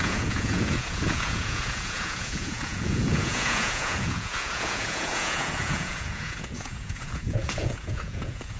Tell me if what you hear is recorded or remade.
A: remade